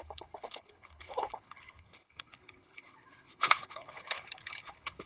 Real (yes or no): no